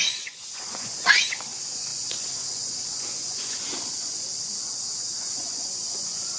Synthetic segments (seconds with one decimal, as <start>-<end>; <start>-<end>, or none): 0.0-6.4